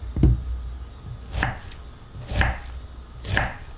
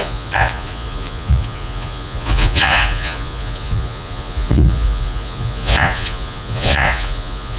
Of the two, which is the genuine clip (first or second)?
first